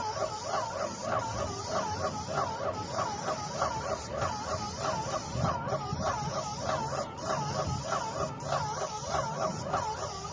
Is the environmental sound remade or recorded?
recorded